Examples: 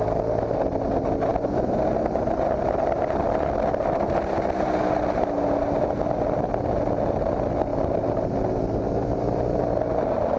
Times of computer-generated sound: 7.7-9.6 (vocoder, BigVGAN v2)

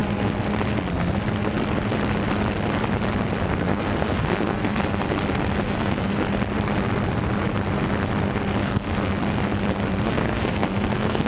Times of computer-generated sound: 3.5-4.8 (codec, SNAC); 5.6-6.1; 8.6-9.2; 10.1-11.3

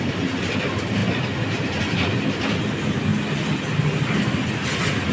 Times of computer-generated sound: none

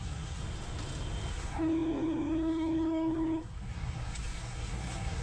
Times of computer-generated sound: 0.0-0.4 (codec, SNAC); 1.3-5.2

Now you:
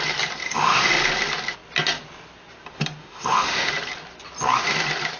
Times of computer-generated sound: 0.4-0.9 (autoencoder, DAC-VAE); 3.0-3.7

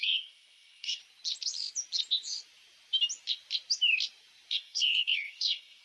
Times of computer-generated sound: 0.0-1.0 (codec, SNAC); 4.5-5.8